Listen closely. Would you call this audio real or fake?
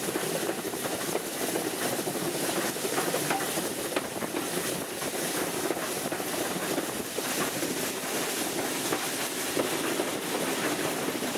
real